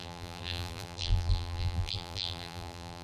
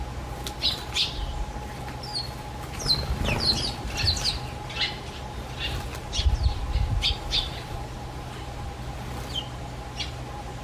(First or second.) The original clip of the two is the second